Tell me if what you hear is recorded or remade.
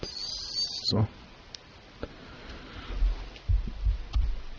recorded